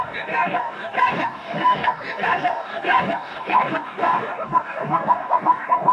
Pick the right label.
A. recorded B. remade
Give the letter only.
B